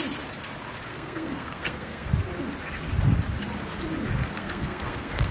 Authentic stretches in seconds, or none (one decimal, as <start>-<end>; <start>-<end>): 0.0-0.9; 2.1-4.2